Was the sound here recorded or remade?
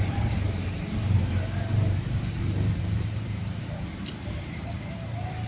remade